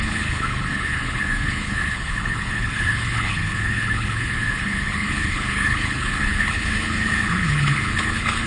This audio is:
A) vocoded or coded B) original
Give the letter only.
A